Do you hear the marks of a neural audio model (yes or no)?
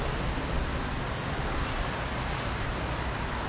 no